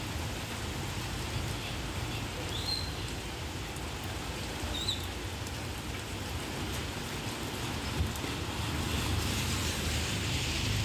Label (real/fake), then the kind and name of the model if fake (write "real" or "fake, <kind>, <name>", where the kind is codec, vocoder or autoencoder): real